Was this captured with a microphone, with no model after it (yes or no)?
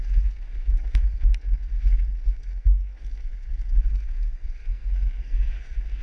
no